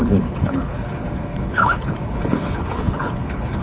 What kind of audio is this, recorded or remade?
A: remade